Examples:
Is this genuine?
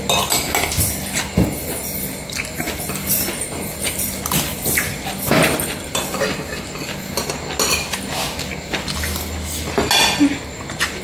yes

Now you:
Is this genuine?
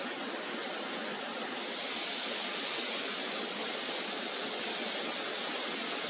yes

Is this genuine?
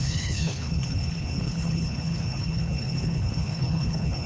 no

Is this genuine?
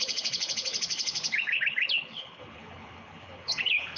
no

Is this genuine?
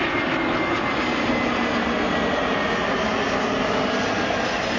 yes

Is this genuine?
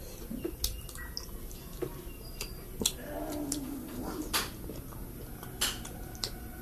yes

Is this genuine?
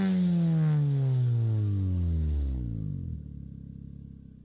yes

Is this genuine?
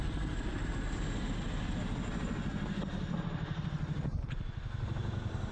yes